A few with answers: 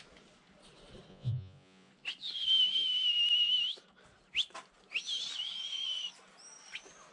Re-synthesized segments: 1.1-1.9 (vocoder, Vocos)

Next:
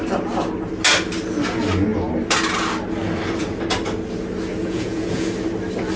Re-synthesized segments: 4.6-5.3 (vocoder, Vocos)

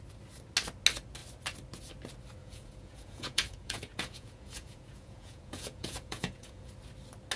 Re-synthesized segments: 2.4-6.7 (vocoder, Vocos)